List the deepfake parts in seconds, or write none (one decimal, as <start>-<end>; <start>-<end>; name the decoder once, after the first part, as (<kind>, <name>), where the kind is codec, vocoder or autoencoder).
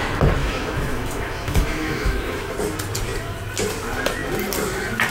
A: 0.4-2.5 (autoencoder, DAC-VAE)